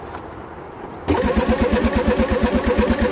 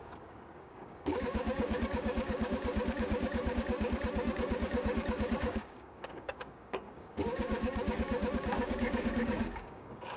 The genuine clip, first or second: first